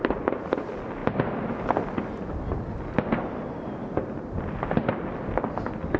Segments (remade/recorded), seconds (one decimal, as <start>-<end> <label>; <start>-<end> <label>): 0.0-6.0 recorded